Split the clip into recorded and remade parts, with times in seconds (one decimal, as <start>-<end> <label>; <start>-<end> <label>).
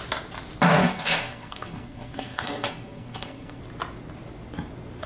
0.0-0.8 recorded; 0.8-3.6 remade; 3.6-5.1 recorded